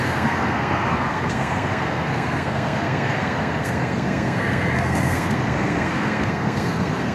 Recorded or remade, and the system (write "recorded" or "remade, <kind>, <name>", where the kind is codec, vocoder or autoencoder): remade, codec, SNAC